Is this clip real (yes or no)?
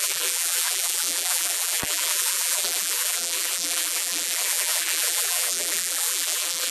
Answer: no